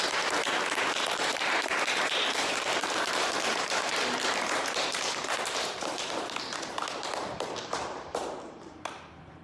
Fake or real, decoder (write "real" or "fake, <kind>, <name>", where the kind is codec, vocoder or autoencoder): fake, vocoder, BigVGAN v2